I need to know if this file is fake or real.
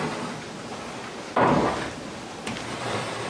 real